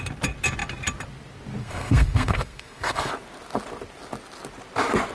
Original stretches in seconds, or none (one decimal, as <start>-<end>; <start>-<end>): 0.0-1.6; 3.1-5.1